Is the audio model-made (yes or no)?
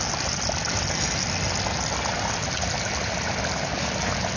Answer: no